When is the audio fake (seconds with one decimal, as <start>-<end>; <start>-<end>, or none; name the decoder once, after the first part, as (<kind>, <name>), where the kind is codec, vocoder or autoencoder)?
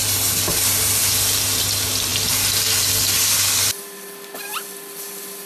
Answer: none